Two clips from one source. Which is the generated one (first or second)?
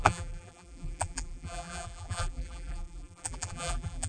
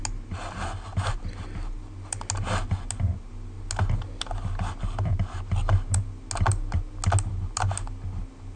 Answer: first